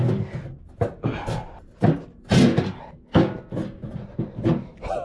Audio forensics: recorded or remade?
recorded